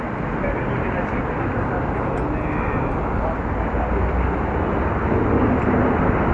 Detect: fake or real real